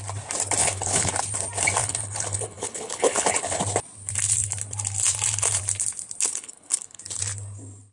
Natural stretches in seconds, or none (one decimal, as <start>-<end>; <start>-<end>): 0.0-0.6; 1.1-1.8; 3.6-6.3; 7.0-7.9